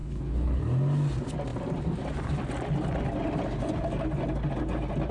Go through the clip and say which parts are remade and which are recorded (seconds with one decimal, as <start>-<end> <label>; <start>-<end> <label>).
0.0-0.6 remade; 0.6-5.1 recorded